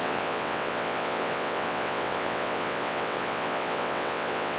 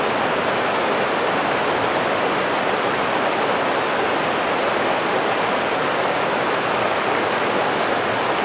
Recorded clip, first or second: second